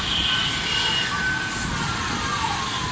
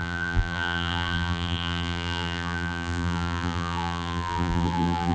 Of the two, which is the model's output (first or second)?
second